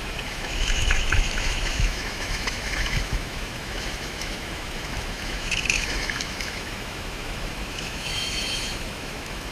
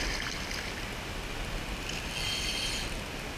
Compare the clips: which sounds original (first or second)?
second